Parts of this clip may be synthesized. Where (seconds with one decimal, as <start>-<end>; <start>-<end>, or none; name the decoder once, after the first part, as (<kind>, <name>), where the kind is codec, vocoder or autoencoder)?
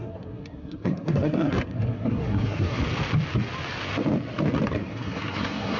0.0-2.8 (codec, SNAC); 4.8-5.8